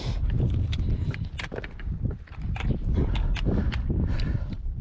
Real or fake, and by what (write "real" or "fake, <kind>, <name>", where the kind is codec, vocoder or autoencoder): real